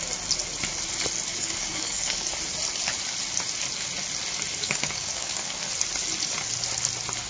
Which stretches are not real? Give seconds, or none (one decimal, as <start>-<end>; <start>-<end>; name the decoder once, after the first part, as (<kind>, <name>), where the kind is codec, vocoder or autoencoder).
1.3-2.3 (codec, DAC); 4.6-5.6

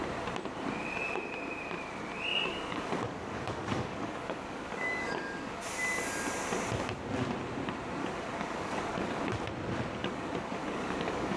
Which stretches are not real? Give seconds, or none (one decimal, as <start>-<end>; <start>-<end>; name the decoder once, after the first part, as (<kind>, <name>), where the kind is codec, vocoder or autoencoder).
2.3-5.6 (codec, DAC); 8.0-9.2; 10.0-11.4